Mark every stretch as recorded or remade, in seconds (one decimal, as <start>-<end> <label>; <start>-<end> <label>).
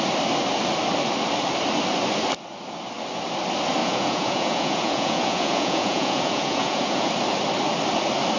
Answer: 0.0-3.8 recorded; 3.8-7.1 remade; 7.1-8.4 recorded